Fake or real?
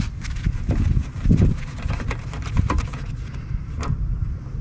fake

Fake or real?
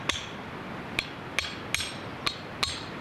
real